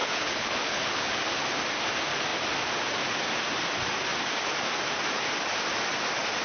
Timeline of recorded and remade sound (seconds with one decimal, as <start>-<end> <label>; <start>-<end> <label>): 0.0-1.2 remade; 1.2-6.4 recorded